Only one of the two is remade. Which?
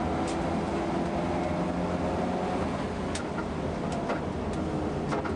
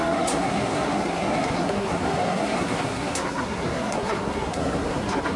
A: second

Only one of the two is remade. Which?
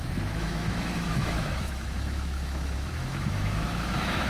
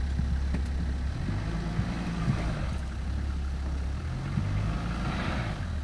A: first